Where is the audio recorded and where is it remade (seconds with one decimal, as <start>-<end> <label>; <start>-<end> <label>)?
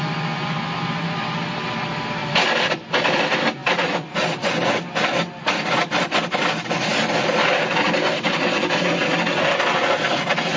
0.0-10.6 recorded